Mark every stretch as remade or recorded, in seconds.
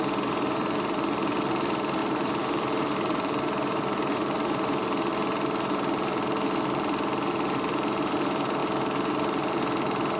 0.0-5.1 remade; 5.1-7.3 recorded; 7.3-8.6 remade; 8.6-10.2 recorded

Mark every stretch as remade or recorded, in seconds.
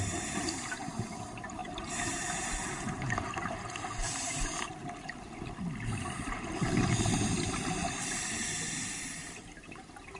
0.0-4.8 remade; 4.8-8.5 recorded; 8.5-10.2 remade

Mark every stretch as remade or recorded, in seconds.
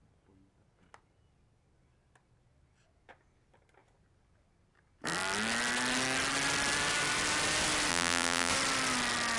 0.0-7.9 recorded; 7.9-8.5 remade; 8.5-9.4 recorded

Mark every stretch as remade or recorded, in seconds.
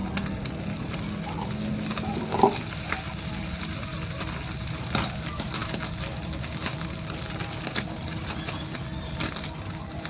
0.0-3.9 recorded; 3.9-4.5 remade; 4.5-5.6 recorded; 5.6-10.1 remade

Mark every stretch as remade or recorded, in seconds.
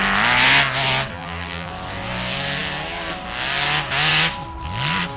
0.0-1.1 recorded; 1.1-1.7 remade; 1.7-5.2 recorded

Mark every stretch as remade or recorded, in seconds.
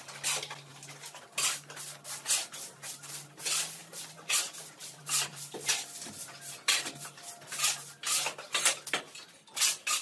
0.0-3.8 recorded; 3.8-7.3 remade; 7.3-10.0 recorded